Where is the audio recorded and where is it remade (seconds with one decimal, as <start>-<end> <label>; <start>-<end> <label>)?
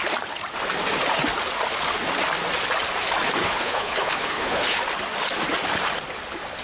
0.0-3.4 recorded; 3.4-4.8 remade; 4.8-6.6 recorded